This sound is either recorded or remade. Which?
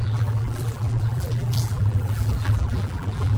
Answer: remade